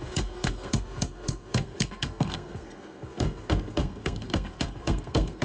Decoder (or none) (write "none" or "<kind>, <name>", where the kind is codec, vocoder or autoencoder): codec, SNAC